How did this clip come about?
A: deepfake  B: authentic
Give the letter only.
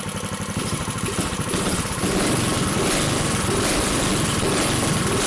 B